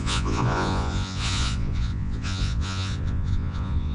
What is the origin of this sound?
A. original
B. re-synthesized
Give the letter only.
B